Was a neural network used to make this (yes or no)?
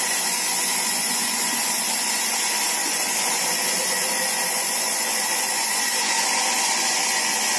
yes